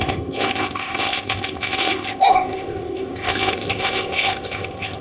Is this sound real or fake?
fake